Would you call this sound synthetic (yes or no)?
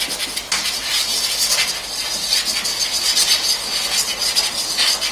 no